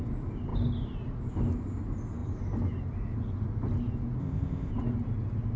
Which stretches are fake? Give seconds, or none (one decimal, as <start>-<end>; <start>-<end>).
4.2-4.7